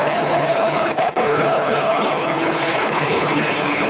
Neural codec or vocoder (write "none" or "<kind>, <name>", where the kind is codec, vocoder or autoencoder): codec, HILCodec